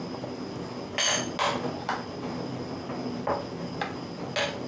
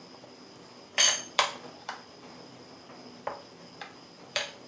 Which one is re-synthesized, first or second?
second